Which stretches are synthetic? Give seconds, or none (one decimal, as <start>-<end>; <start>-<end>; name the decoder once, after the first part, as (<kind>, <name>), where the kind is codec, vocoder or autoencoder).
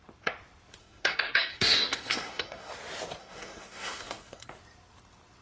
0.8-2.7 (codec, SNAC); 3.2-4.5